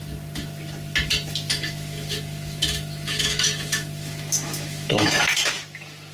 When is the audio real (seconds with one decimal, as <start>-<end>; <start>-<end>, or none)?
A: 0.0-1.5; 5.2-6.1